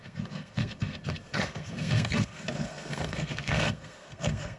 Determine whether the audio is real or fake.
fake